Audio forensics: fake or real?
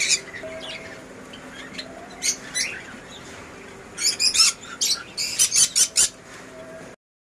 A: real